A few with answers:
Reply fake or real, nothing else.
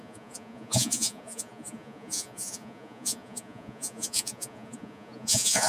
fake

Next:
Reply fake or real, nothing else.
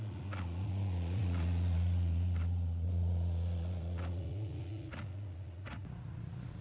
fake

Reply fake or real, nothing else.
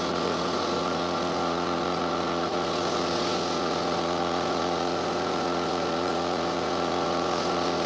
fake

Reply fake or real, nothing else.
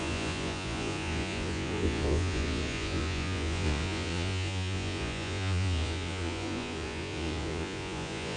fake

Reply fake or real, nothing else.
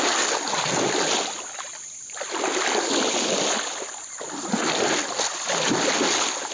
real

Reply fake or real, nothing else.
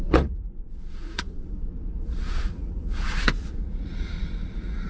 fake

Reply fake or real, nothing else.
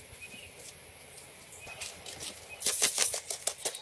real